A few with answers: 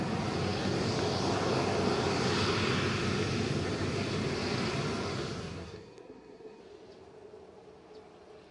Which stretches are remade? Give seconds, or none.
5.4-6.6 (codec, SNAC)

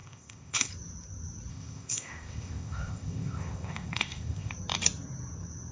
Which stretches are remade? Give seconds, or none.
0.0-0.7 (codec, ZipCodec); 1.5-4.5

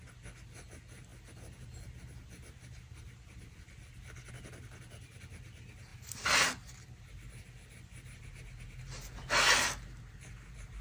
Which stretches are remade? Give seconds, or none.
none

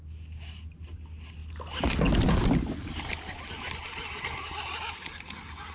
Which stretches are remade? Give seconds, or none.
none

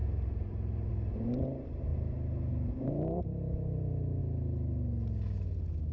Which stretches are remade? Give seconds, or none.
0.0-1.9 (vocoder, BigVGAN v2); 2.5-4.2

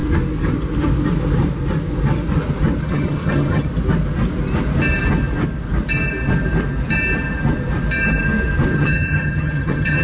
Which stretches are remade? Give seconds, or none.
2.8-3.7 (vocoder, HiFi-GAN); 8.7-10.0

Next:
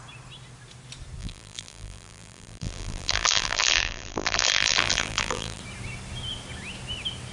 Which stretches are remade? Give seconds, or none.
1.2-5.6 (vocoder, BigVGAN v2)

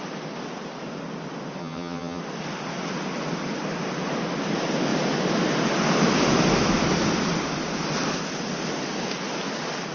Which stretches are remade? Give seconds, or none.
1.6-2.2 (vocoder, HiFi-GAN)